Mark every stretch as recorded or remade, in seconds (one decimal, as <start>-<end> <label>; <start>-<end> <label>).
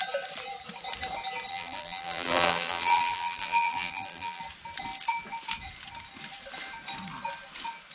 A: 0.0-1.5 recorded; 1.5-4.4 remade; 4.4-7.9 recorded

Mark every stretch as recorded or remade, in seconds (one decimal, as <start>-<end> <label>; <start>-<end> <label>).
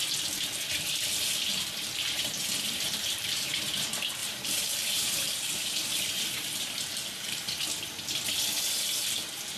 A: 0.0-1.5 recorded; 1.5-3.5 remade; 3.5-4.2 recorded; 4.2-7.6 remade; 7.6-9.6 recorded